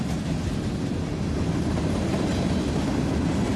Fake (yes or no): no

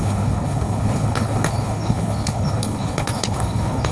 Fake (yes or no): yes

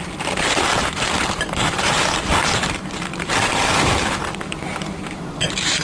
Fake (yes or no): yes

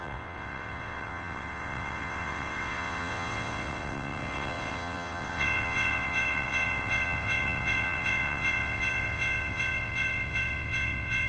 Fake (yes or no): yes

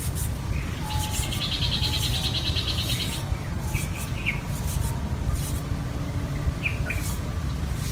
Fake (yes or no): no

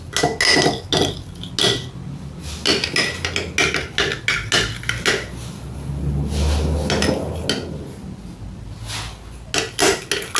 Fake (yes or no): no